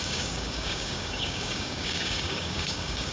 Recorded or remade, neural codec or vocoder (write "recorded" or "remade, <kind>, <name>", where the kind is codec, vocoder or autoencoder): remade, codec, DAC